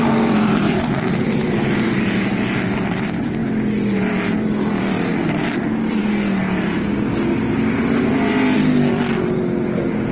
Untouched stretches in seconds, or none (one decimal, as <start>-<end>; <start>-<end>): 3.4-4.1; 5.1-5.6; 6.0-8.9